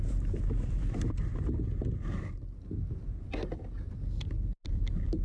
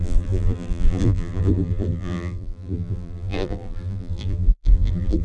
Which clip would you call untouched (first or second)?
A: first